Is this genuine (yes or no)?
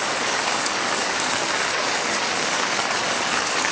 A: no